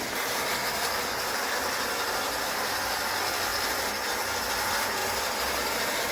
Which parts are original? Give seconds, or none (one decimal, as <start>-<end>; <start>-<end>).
0.0-6.1